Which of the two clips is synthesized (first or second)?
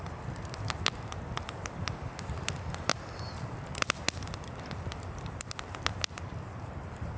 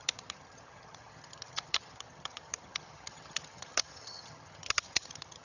second